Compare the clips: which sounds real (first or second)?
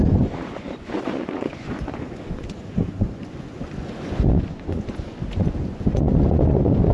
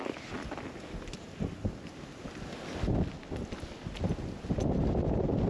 second